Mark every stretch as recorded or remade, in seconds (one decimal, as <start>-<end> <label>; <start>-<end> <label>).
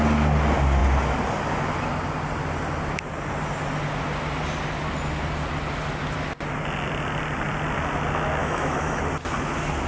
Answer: 0.0-8.4 recorded; 8.4-9.0 remade; 9.0-9.9 recorded